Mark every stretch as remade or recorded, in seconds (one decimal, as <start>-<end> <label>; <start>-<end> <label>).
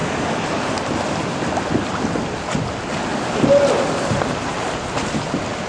0.0-5.7 recorded